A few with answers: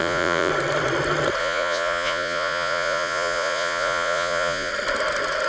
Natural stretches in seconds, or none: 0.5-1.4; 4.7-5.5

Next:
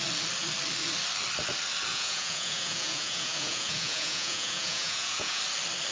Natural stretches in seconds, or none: 0.0-1.9; 5.4-5.9